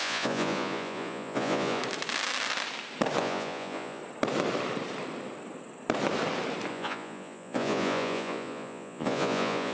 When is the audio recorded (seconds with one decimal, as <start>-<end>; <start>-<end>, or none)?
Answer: 1.8-3.2; 4.0-6.7